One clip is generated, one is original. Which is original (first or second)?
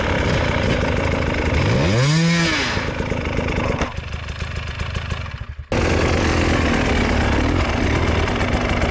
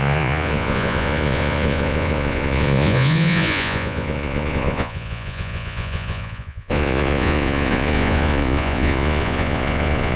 first